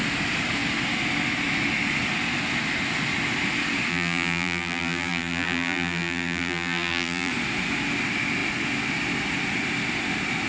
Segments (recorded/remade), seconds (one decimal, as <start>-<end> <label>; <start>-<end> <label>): 0.0-3.9 recorded; 3.9-7.3 remade; 7.3-10.5 recorded